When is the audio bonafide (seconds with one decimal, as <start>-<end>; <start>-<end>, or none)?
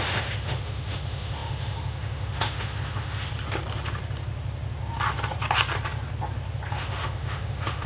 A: 3.3-6.7